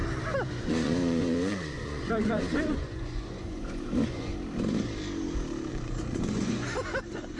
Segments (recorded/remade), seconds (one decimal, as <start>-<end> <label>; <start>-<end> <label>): 0.0-0.6 recorded; 0.6-4.3 remade; 4.3-5.7 recorded; 5.7-7.4 remade